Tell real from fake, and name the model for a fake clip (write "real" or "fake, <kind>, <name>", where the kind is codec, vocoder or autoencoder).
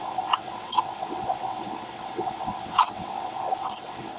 fake, vocoder, WaveNeXt